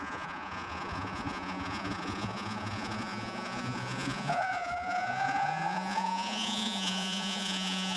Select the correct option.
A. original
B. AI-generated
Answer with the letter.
B